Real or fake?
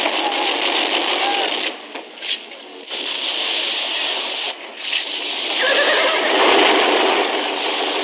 real